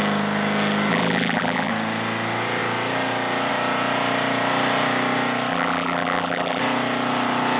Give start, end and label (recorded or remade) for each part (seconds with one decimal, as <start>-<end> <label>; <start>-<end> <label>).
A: 0.0-0.9 recorded; 0.9-1.7 remade; 1.7-5.5 recorded; 5.5-6.6 remade; 6.6-7.6 recorded